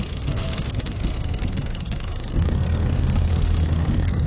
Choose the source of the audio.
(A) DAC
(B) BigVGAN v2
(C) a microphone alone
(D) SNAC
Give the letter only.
D